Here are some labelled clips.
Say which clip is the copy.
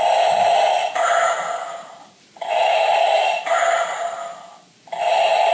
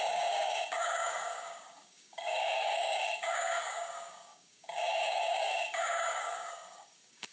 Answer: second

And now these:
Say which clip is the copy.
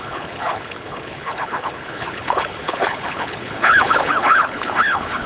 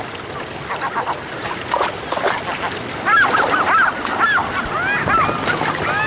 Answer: first